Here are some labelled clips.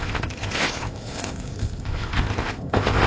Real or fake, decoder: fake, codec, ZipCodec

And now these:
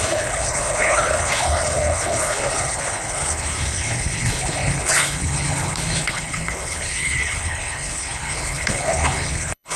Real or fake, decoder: fake, codec, HILCodec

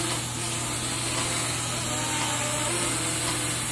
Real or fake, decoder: real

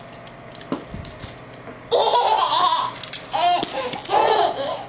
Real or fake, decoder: real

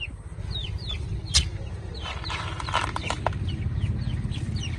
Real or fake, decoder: real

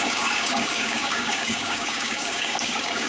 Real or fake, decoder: fake, codec, DAC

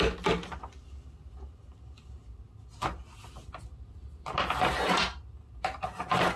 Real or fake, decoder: real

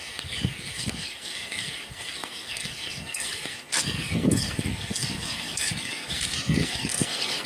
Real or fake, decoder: fake, codec, SNAC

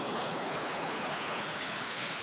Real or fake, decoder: fake, codec, HILCodec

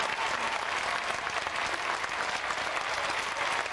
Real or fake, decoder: real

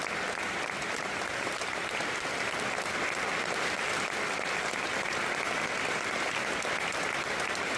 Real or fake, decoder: real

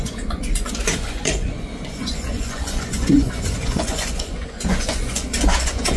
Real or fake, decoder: fake, vocoder, Vocos